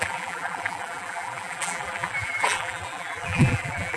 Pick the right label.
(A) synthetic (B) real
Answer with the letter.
A